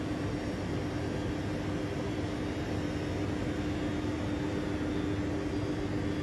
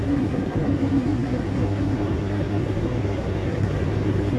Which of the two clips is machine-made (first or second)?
second